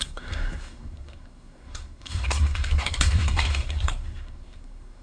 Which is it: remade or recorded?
remade